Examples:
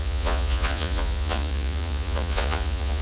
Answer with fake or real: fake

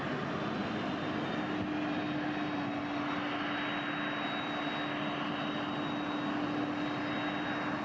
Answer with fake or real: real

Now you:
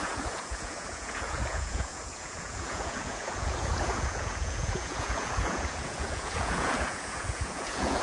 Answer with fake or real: fake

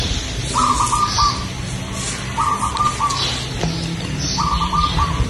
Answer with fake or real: real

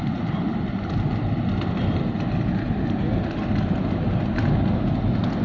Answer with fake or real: real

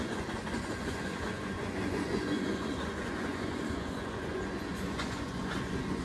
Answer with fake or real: fake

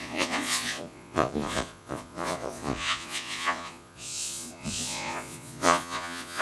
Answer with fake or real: fake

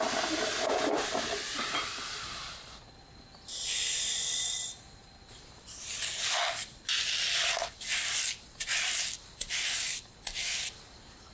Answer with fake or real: real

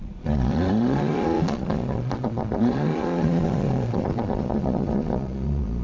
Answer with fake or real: fake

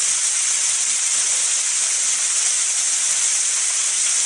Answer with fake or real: real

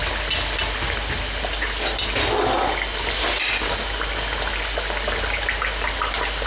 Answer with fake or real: real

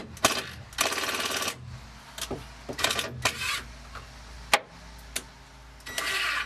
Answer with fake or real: real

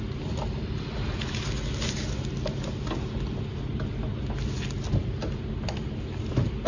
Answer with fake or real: real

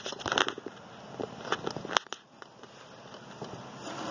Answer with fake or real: real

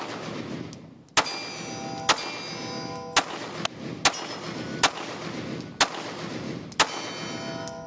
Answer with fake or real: real